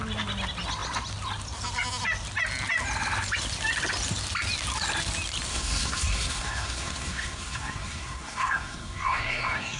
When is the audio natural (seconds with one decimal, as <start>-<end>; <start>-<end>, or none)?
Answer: 0.0-5.5